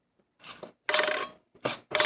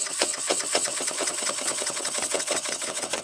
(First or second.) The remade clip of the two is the second